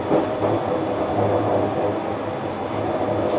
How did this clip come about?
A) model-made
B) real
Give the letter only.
B